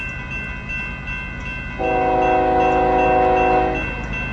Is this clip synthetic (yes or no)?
no